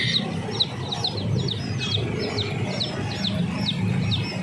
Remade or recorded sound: recorded